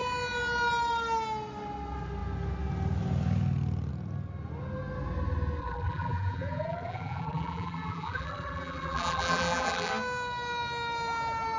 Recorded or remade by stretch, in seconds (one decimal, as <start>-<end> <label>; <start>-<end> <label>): 0.0-5.6 recorded; 5.6-9.9 remade; 9.9-11.6 recorded